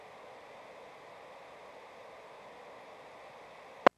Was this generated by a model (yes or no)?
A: no